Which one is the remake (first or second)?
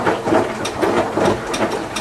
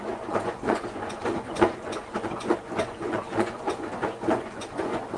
second